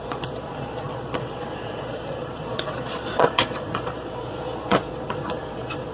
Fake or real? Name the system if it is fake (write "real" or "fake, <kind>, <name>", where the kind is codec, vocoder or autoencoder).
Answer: fake, vocoder, Vocos